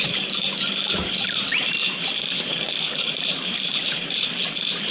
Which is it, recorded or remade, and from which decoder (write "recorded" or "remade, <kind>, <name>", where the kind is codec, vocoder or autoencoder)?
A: remade, vocoder, BigVGAN v2